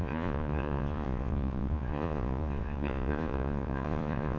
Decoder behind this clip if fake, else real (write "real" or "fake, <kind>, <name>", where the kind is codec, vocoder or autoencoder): fake, vocoder, Vocos